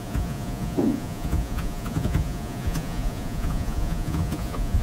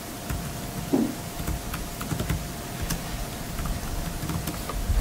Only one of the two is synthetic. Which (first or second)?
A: first